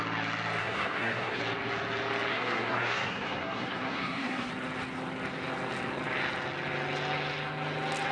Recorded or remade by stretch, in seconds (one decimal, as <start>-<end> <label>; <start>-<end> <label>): 0.0-0.6 recorded; 0.6-1.4 remade; 1.4-2.3 recorded; 2.3-4.5 remade; 4.5-8.1 recorded